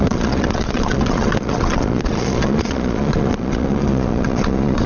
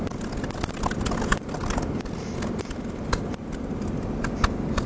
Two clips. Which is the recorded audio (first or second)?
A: second